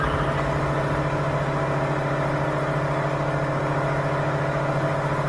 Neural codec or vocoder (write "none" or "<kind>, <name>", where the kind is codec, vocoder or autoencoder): none